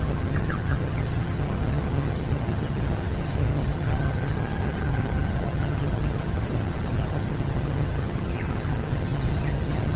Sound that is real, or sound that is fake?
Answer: fake